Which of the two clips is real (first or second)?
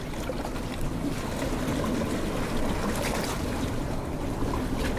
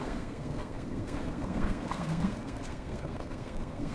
first